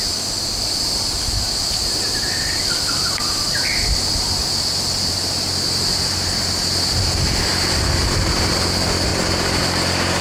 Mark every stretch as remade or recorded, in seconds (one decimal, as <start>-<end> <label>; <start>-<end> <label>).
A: 0.0-9.1 recorded; 9.1-9.6 remade; 9.6-10.2 recorded